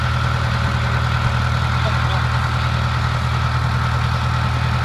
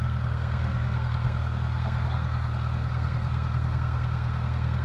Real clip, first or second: first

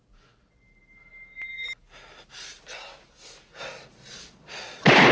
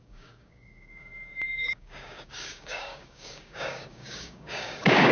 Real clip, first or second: first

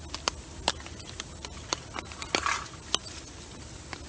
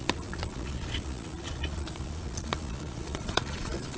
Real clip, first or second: first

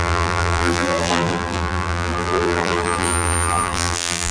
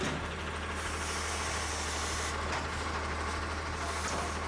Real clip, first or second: second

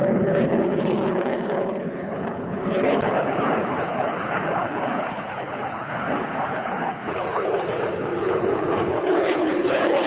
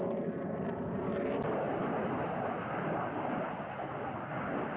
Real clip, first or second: second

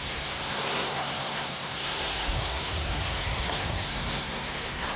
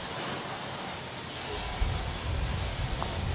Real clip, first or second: second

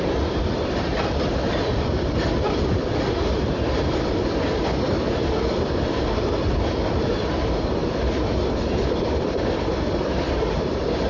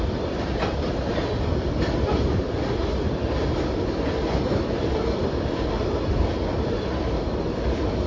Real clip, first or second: second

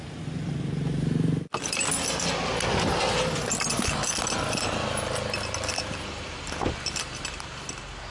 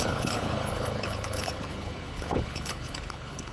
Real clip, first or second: first